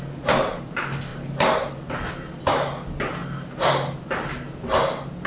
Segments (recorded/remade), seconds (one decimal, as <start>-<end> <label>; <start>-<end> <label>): 0.0-5.3 recorded